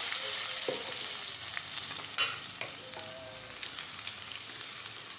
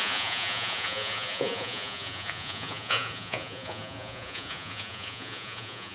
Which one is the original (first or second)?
first